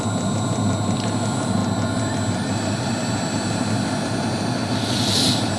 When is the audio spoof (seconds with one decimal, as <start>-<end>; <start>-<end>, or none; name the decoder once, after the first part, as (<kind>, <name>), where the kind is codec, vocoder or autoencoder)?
none